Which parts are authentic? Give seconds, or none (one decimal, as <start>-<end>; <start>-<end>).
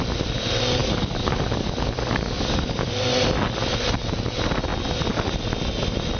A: 0.0-0.8; 2.9-6.2